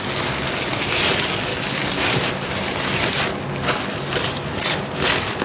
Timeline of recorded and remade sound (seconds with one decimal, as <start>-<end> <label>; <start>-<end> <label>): 0.0-1.5 recorded; 1.5-2.3 remade; 2.3-5.4 recorded